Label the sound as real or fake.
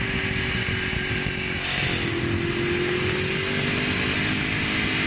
real